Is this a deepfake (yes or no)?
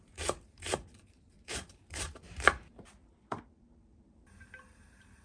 yes